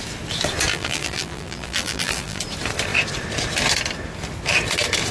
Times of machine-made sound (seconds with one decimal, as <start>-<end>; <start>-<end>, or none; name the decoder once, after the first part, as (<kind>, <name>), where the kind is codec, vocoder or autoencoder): 0.7-2.4 (vocoder, BigVGAN v2)